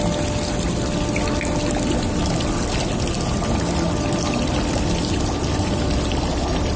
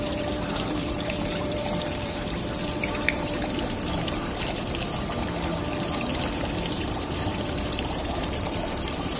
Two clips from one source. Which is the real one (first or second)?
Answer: first